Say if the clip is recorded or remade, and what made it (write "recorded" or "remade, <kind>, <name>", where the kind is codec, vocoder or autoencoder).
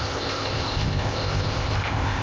remade, codec, ZipCodec